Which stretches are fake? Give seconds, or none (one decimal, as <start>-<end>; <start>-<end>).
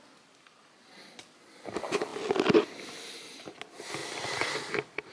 none